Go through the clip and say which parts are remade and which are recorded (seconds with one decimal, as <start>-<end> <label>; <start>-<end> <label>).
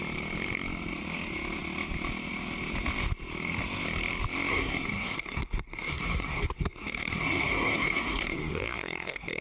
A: 0.0-4.5 recorded; 4.5-9.4 remade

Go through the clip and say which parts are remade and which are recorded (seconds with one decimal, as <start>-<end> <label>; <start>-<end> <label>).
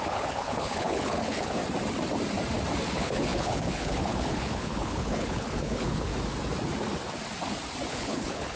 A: 0.0-1.6 remade; 1.6-2.9 recorded; 2.9-6.1 remade; 6.1-7.9 recorded; 7.9-8.6 remade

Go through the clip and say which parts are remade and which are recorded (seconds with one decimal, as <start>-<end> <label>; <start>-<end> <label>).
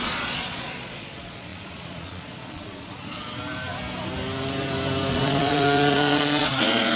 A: 0.0-3.4 remade; 3.4-5.1 recorded; 5.1-7.0 remade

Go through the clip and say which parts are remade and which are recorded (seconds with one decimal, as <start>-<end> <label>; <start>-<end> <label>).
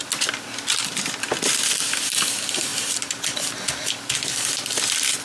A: 0.0-5.2 remade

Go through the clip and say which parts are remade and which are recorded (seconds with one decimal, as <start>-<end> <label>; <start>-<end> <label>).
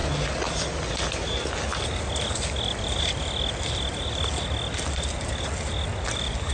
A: 0.0-6.5 recorded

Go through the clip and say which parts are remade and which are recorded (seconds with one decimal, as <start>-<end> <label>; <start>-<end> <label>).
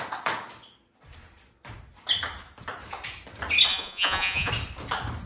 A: 0.0-3.7 recorded; 3.7-4.5 remade; 4.5-5.3 recorded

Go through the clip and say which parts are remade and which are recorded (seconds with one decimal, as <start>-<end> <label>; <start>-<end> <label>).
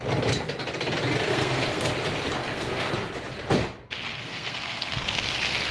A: 0.0-1.3 recorded; 1.3-1.9 remade; 1.9-2.4 recorded; 2.4-2.9 remade; 2.9-4.1 recorded; 4.1-5.0 remade; 5.0-5.7 recorded